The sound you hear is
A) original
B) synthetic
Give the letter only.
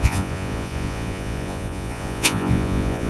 B